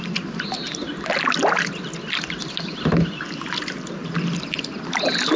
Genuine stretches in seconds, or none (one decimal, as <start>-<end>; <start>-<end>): 0.0-5.4